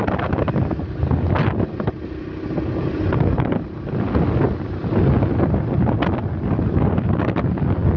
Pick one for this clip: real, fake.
real